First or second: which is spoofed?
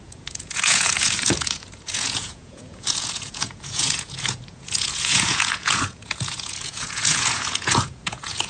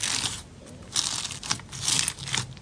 first